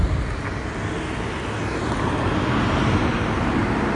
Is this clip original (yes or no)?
yes